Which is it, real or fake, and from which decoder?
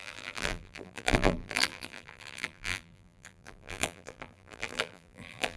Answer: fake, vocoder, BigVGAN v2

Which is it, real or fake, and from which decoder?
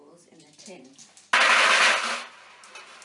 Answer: real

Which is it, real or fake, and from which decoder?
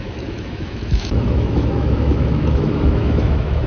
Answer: fake, autoencoder, DAC-VAE